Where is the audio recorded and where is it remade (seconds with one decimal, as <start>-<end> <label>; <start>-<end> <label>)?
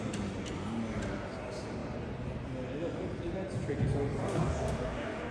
0.0-4.2 recorded; 4.2-5.3 remade